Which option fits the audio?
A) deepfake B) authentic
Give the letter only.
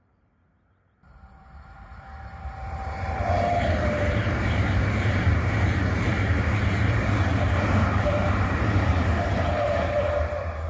A